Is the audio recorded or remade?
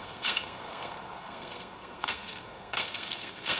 remade